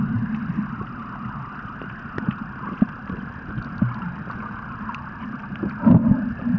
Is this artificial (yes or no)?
no